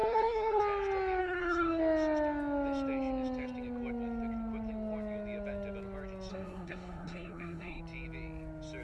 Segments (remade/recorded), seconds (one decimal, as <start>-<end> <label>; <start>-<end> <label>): 0.0-0.6 remade; 0.6-1.2 recorded; 1.2-1.8 remade; 1.8-6.3 recorded; 6.3-7.8 remade; 7.8-8.8 recorded